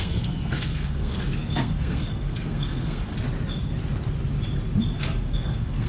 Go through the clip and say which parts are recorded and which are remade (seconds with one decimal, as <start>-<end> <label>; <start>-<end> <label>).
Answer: 0.0-3.1 remade; 3.1-5.0 recorded; 5.0-5.9 remade